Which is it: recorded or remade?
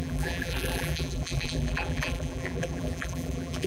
remade